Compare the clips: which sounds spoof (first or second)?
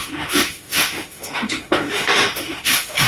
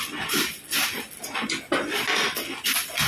first